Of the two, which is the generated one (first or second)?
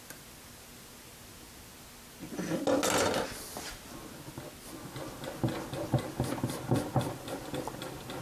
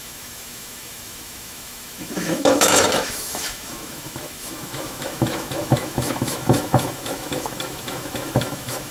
second